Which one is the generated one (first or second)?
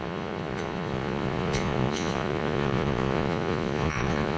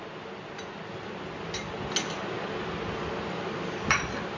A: first